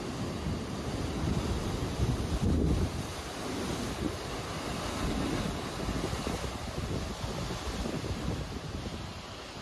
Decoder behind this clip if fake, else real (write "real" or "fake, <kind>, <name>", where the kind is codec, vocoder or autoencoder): real